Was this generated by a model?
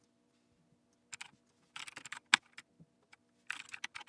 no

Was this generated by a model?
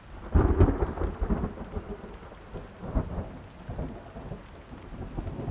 no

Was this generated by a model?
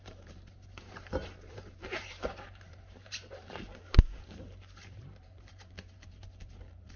yes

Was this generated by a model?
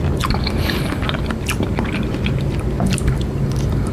no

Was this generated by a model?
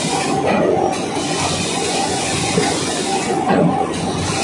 yes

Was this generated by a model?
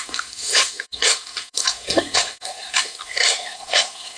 yes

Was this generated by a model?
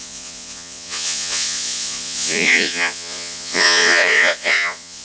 yes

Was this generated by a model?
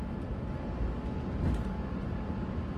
no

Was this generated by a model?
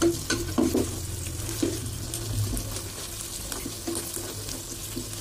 no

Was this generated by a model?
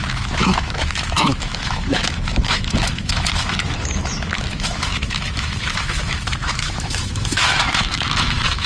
yes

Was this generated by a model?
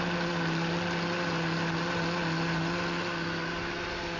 no